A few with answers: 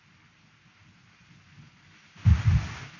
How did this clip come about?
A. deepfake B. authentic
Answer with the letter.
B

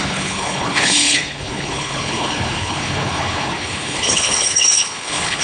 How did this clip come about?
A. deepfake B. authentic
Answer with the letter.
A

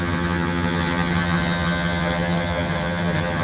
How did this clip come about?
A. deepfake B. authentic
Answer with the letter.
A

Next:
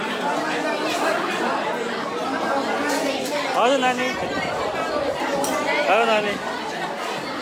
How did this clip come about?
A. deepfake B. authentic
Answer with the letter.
B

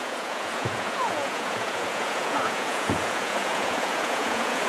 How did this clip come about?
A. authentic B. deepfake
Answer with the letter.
B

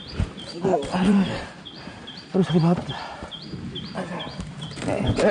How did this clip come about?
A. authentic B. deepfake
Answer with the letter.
B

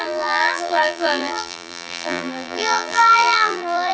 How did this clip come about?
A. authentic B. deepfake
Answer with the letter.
B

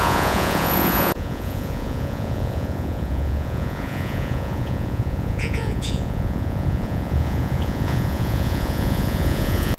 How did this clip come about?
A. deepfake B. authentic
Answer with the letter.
A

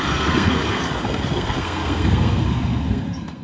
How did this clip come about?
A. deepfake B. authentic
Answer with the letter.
A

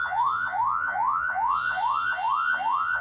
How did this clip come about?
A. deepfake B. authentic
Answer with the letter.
A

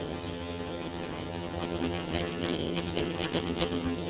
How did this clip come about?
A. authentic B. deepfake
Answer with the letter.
B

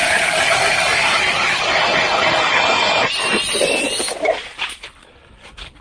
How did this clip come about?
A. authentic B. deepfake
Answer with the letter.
B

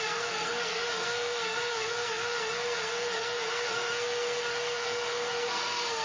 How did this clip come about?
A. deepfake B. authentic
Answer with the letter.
A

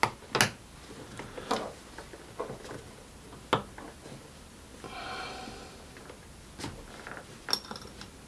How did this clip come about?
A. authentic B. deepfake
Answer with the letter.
A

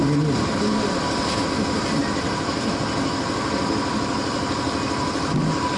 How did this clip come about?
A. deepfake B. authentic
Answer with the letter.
B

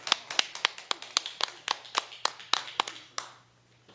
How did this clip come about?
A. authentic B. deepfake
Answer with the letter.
A